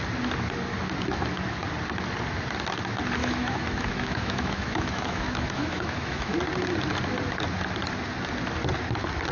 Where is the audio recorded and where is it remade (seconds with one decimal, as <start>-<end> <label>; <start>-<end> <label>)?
0.0-3.2 recorded; 3.2-6.4 remade; 6.4-9.3 recorded